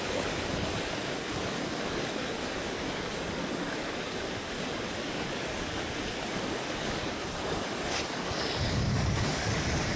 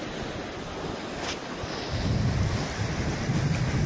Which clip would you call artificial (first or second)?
first